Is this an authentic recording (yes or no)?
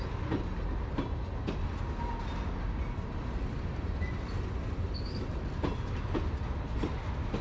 yes